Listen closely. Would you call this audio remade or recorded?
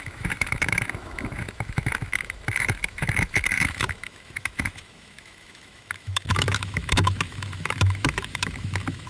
remade